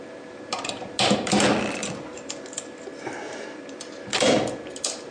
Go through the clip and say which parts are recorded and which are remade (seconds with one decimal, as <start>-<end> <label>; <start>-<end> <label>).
0.0-5.1 recorded